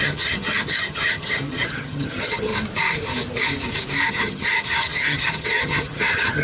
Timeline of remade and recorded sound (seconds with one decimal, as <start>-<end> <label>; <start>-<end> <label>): 0.0-2.5 remade; 2.5-4.1 recorded; 4.1-6.4 remade